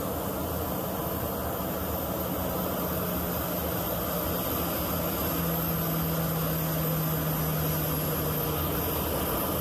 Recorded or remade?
recorded